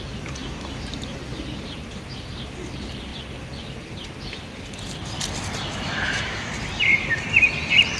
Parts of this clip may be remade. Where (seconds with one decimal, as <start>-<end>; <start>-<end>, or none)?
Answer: 5.7-6.5